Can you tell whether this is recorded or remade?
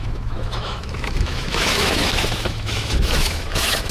remade